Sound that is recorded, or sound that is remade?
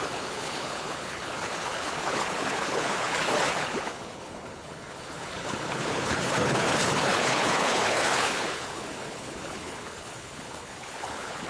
remade